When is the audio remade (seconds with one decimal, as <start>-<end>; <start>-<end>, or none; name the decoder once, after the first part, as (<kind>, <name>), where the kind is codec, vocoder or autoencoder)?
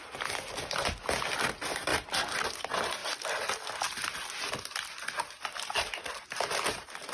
none